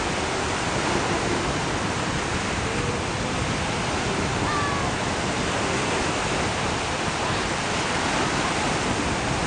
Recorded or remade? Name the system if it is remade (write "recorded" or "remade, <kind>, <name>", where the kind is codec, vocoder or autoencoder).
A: recorded